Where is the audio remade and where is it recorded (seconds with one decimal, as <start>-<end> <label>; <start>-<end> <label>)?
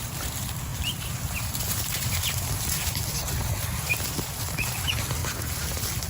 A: 0.0-5.2 remade; 5.2-6.1 recorded